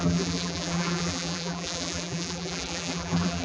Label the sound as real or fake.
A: fake